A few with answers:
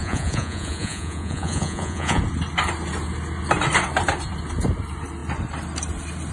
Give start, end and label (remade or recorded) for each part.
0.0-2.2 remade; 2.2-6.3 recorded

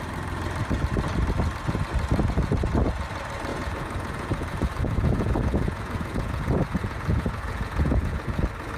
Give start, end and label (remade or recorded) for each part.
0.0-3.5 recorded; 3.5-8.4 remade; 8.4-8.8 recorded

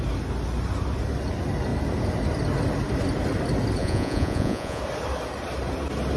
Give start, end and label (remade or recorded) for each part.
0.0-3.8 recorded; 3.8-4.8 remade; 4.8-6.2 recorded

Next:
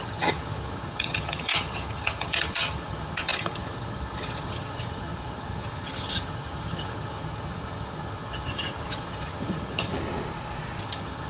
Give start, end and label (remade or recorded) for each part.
0.0-9.9 remade; 9.9-10.8 recorded; 10.8-11.3 remade

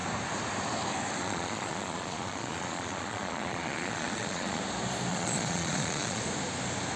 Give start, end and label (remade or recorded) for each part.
0.0-1.2 recorded; 1.2-4.6 remade; 4.6-5.1 recorded; 5.1-6.2 remade; 6.2-7.0 recorded

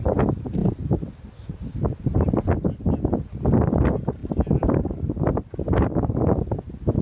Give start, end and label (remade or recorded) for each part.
0.0-7.0 recorded

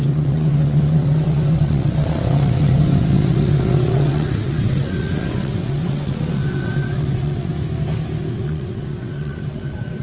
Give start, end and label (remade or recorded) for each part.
0.0-7.5 remade; 7.5-8.3 recorded; 8.3-10.0 remade

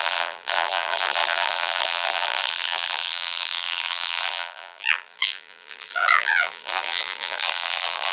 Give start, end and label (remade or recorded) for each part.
0.0-8.1 remade